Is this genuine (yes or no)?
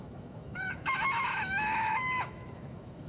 no